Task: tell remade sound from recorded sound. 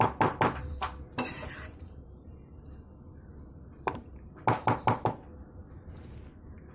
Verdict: recorded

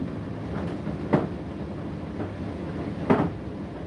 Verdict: recorded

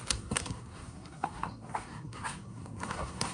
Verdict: remade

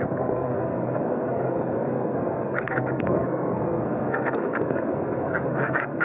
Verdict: remade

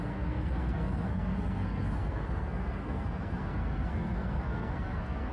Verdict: remade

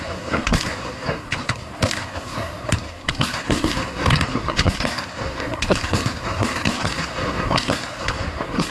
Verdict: remade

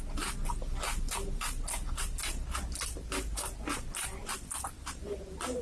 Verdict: recorded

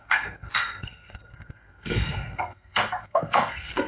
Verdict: remade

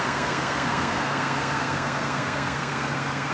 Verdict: remade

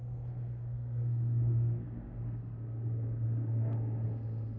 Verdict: remade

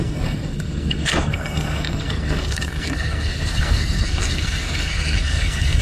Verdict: remade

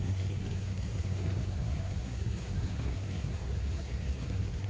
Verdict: remade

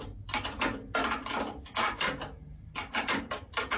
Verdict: recorded